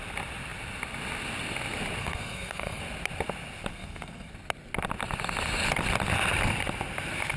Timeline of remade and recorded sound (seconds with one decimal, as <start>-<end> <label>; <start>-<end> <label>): 0.0-2.0 recorded; 2.0-2.8 remade; 2.8-3.7 recorded; 3.7-4.3 remade; 4.3-7.4 recorded